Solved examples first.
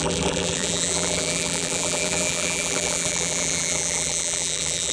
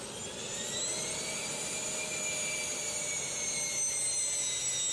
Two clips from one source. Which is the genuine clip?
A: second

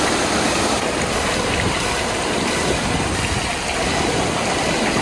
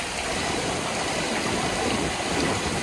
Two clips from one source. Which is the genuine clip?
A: first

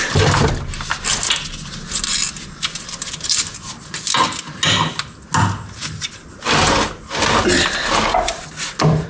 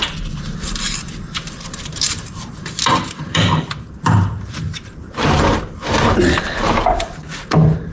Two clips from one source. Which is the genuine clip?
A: first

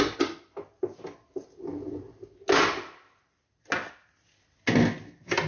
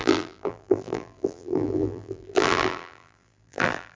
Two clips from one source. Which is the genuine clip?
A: first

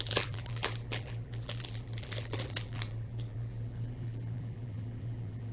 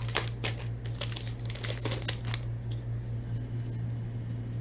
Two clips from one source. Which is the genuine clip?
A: second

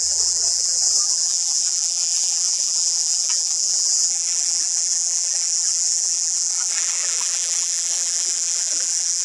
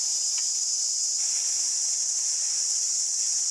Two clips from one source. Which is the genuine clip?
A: second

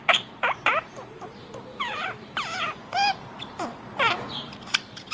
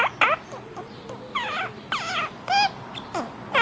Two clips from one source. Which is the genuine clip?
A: second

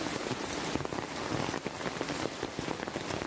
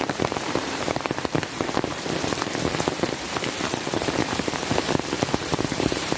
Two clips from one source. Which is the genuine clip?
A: first